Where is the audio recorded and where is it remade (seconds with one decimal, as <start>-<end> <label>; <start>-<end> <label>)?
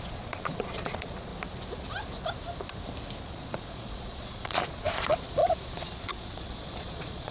0.0-1.3 remade; 1.3-3.3 recorded; 3.3-7.3 remade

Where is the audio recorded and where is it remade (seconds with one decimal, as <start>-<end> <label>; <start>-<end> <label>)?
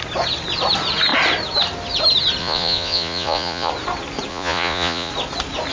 0.0-2.4 recorded; 2.4-3.7 remade; 3.7-4.3 recorded; 4.3-5.1 remade; 5.1-5.7 recorded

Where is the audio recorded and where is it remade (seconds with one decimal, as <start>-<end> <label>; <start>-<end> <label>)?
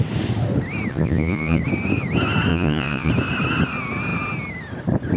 0.0-0.9 recorded; 0.9-1.6 remade; 1.6-2.5 recorded; 2.5-3.1 remade; 3.1-5.2 recorded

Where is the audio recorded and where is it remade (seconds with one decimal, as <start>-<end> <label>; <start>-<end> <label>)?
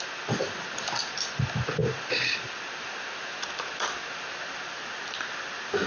0.0-5.9 recorded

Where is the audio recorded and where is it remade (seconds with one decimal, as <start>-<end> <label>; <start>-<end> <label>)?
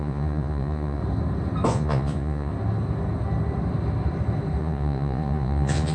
0.0-1.0 remade; 1.0-1.7 recorded; 1.7-2.5 remade; 2.5-4.6 recorded; 4.6-5.9 remade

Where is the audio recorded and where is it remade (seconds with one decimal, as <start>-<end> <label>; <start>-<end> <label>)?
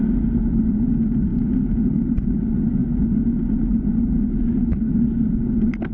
0.0-1.3 recorded; 1.3-1.8 remade; 1.8-5.9 recorded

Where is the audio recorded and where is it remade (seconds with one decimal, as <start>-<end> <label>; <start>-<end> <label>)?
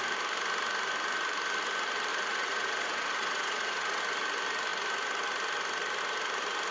0.0-2.1 recorded; 2.1-4.0 remade; 4.0-6.7 recorded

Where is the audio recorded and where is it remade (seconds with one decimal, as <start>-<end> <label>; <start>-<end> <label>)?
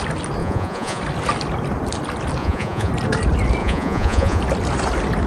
0.0-0.4 recorded; 0.4-1.0 remade; 1.0-2.4 recorded; 2.4-2.9 remade; 2.9-3.6 recorded; 3.6-4.4 remade; 4.4-5.3 recorded